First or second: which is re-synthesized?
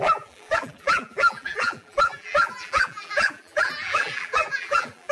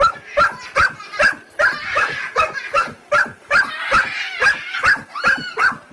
first